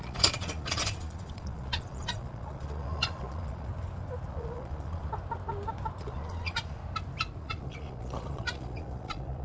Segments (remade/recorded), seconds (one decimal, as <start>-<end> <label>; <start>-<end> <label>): 0.0-3.7 remade; 3.7-4.3 recorded; 4.3-5.1 remade; 5.1-6.0 recorded; 6.0-6.8 remade; 6.8-7.4 recorded; 7.4-9.4 remade